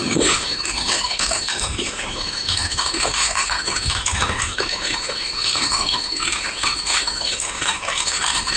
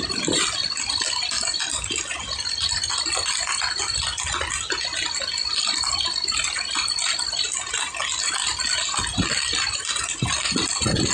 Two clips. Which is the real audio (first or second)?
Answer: second